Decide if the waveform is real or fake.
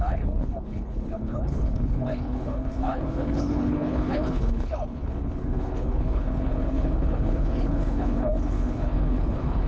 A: fake